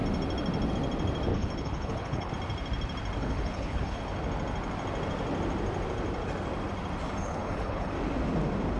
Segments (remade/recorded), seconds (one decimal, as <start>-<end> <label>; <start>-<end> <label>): 0.0-1.3 recorded; 1.3-2.3 remade; 2.3-3.2 recorded; 3.2-4.0 remade; 4.0-7.2 recorded; 7.2-7.9 remade; 7.9-8.8 recorded